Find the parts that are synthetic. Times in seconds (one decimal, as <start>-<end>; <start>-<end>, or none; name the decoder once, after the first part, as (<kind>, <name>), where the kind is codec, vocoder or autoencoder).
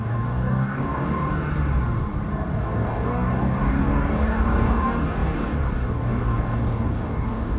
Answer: 0.0-1.5 (codec, DAC); 2.5-7.6